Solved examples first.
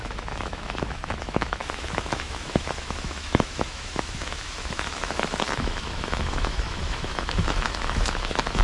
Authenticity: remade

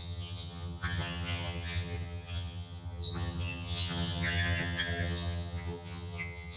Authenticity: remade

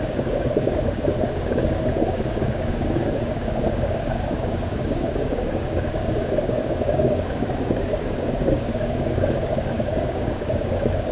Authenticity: remade